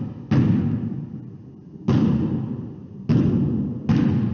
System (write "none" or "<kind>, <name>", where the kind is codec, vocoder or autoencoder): none